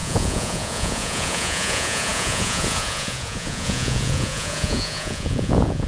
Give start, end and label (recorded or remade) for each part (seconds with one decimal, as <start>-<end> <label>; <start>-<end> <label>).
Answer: 0.0-5.9 remade